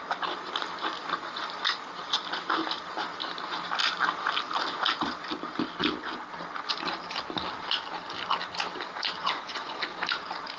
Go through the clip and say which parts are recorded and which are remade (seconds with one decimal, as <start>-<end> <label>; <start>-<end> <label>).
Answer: 0.0-9.2 recorded; 9.2-9.8 remade; 9.8-10.6 recorded